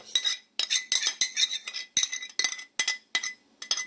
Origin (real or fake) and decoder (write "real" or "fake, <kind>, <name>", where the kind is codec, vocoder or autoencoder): real